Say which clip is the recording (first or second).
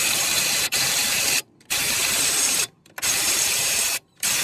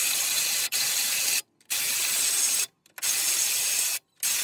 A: second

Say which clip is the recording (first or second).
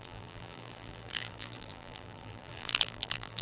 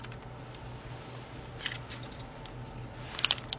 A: second